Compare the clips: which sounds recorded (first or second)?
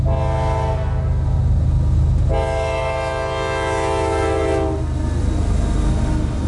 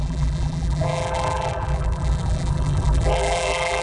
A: first